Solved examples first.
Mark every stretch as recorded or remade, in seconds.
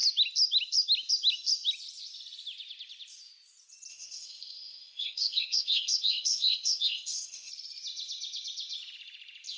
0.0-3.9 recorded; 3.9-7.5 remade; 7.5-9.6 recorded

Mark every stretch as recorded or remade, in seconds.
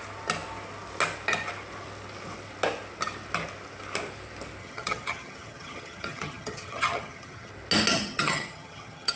0.0-4.6 recorded; 4.6-7.5 remade; 7.5-7.9 recorded; 7.9-9.2 remade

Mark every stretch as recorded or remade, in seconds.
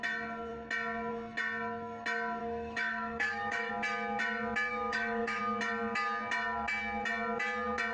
0.0-2.4 recorded; 2.4-3.7 remade; 3.7-4.7 recorded; 4.7-5.4 remade; 5.4-7.9 recorded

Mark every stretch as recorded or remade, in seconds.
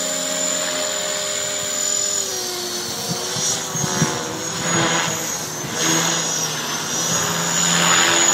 0.0-8.3 recorded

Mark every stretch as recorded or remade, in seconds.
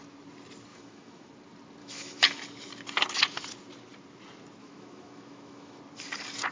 0.0-0.7 recorded; 0.7-1.3 remade; 1.3-1.8 recorded; 1.8-2.4 remade; 2.4-4.6 recorded; 4.6-5.8 remade; 5.8-6.5 recorded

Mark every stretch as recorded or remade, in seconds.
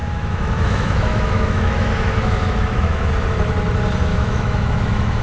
0.0-3.1 remade; 3.1-4.1 recorded; 4.1-5.2 remade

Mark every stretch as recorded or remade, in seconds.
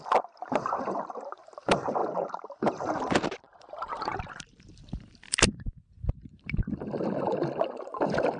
0.0-2.0 recorded; 2.0-4.2 remade; 4.2-8.4 recorded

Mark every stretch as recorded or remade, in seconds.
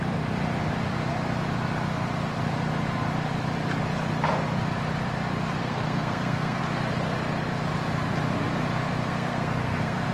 0.0-5.6 recorded; 5.6-6.6 remade; 6.6-9.0 recorded; 9.0-10.1 remade